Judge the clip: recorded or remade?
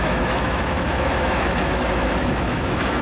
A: remade